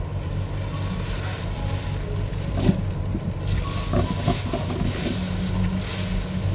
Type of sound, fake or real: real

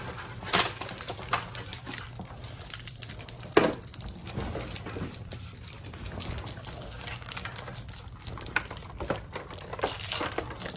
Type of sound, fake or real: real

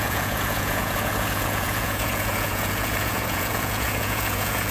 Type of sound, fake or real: fake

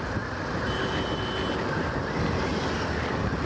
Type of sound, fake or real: real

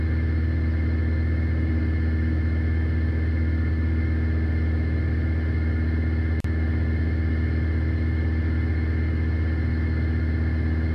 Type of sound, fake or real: real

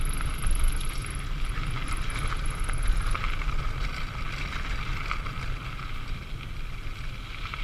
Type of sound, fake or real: real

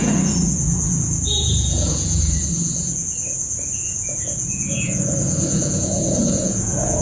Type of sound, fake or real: fake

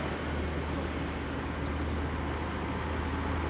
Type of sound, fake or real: real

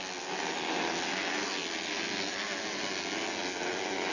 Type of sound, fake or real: real